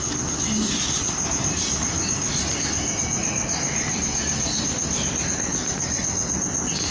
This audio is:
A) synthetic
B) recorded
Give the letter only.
B